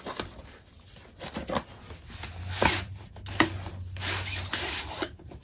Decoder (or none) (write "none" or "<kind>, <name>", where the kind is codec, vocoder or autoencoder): none